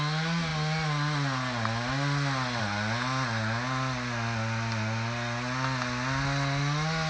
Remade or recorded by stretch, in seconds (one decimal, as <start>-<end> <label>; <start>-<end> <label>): 0.0-7.1 recorded

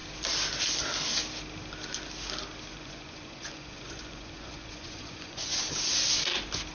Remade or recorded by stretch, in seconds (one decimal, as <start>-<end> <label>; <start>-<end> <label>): 0.0-2.7 recorded; 2.7-5.6 remade; 5.6-6.7 recorded

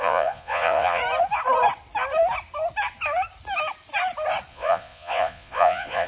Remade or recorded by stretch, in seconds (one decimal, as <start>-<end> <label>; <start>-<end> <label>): 0.0-1.0 remade; 1.0-4.5 recorded; 4.5-6.1 remade